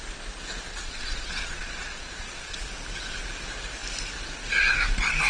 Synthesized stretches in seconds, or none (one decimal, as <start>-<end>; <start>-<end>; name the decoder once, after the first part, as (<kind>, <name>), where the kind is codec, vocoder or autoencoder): 0.7-2.6 (vocoder, Vocos)